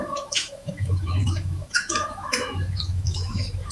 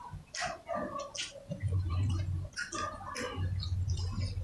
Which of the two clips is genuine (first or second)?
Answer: second